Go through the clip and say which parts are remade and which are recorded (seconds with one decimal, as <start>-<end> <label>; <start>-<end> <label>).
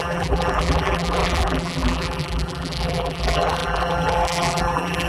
0.0-5.1 remade